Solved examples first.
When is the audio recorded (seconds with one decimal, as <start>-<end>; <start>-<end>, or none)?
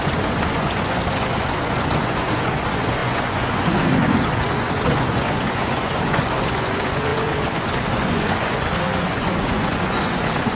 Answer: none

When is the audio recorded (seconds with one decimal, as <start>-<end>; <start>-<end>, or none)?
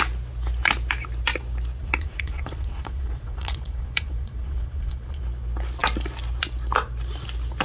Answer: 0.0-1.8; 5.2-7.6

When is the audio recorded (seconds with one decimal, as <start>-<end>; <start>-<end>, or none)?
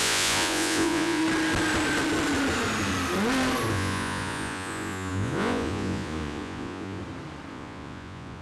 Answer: 1.2-3.7; 7.0-7.5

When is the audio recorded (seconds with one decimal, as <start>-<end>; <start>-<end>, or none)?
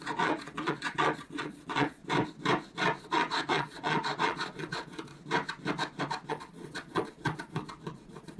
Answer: 2.0-3.0; 5.1-6.3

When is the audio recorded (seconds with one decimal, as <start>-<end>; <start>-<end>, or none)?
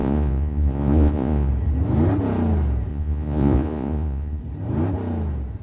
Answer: 1.5-2.9; 4.4-5.6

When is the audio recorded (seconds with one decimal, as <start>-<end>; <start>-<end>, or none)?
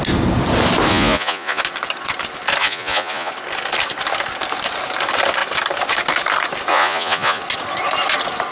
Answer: 0.0-0.9; 1.6-2.6; 3.3-6.7; 7.4-8.5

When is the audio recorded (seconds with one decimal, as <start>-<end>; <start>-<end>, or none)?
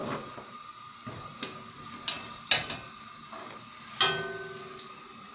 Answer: 0.0-5.3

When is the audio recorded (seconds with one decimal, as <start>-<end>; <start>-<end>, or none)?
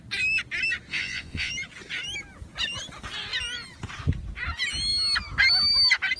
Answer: 0.0-0.9; 1.5-6.2